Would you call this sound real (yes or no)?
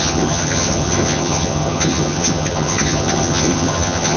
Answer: no